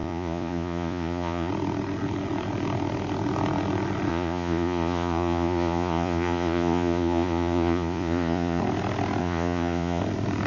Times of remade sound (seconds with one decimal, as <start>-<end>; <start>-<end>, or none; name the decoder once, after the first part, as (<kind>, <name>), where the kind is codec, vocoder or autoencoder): 0.0-1.5 (vocoder, Vocos); 4.1-8.6; 9.2-10.0